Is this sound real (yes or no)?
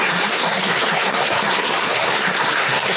no